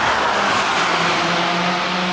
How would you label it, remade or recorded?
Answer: recorded